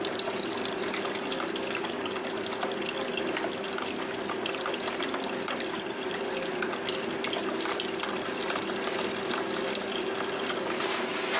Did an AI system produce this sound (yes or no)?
no